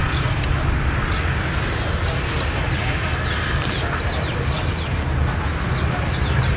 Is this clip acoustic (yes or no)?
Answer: yes